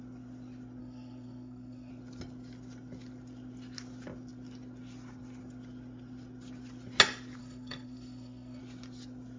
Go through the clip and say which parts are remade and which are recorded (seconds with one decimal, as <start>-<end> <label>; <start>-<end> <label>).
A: 0.0-0.8 recorded; 0.8-1.9 remade; 1.9-7.4 recorded; 7.4-8.6 remade; 8.6-9.4 recorded